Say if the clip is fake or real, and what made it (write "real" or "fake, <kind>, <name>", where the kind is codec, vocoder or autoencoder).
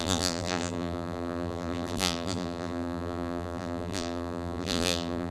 fake, vocoder, BigVGAN v2